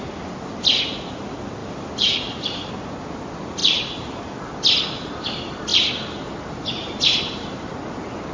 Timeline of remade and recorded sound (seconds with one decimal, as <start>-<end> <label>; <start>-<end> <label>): 0.0-1.6 recorded; 1.6-2.7 remade; 2.7-3.6 recorded; 3.6-4.2 remade; 4.2-5.7 recorded; 5.7-7.7 remade; 7.7-8.3 recorded